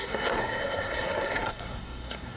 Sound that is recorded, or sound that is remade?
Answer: remade